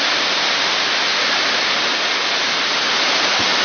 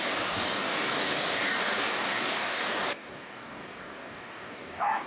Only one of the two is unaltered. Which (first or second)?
first